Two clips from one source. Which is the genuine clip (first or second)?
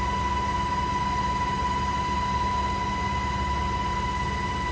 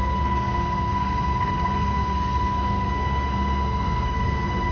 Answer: first